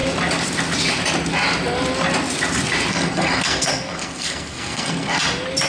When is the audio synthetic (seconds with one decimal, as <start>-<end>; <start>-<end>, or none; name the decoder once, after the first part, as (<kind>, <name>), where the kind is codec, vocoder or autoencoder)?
2.9-5.2 (codec, SNAC)